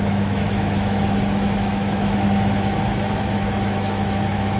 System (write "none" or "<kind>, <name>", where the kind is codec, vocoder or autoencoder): autoencoder, DAC-VAE